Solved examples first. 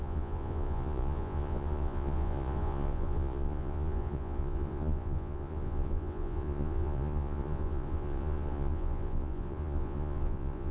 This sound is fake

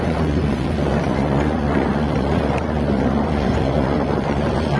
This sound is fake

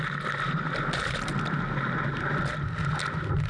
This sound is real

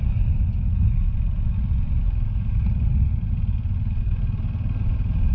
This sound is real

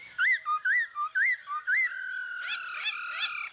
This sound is real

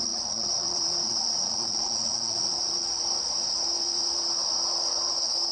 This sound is fake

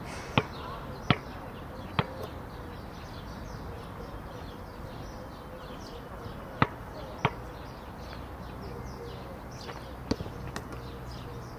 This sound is real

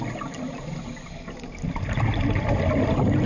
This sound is real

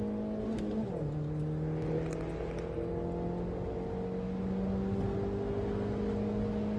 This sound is real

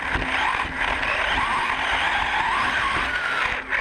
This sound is real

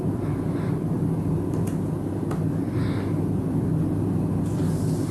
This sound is real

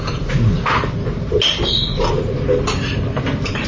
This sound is real